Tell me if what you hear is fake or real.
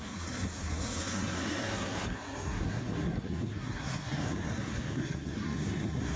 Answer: fake